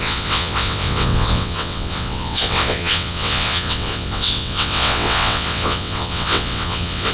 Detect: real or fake fake